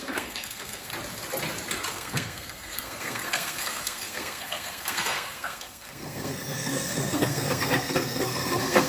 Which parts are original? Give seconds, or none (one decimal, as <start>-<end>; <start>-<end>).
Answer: 0.9-1.9